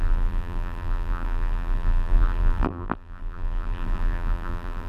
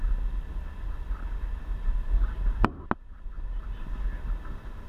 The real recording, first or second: second